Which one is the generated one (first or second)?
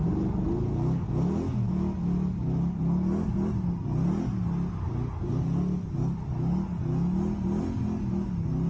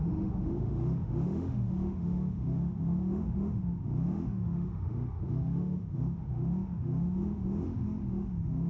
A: second